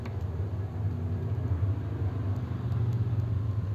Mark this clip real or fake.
real